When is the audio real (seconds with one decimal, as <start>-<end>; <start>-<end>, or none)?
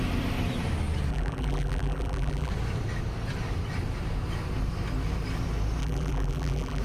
0.0-1.1; 2.5-5.8